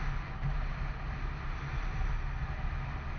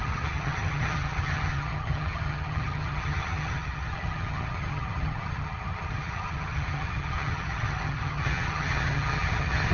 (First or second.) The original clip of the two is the first